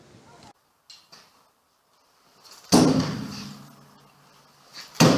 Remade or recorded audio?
recorded